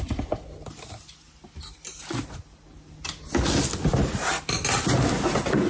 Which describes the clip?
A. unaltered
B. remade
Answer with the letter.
A